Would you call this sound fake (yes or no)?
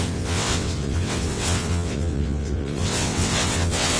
yes